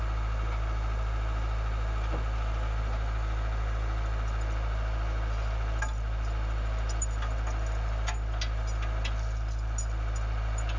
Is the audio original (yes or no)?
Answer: yes